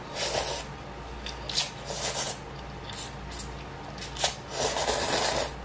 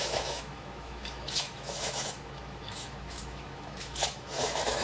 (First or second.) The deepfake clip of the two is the second